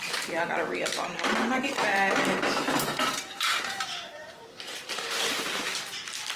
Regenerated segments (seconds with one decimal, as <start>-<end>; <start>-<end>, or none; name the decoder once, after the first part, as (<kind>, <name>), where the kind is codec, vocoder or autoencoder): 1.9-5.7 (vocoder, BigVGAN v2)